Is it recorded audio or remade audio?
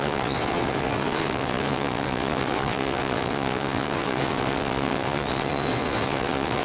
remade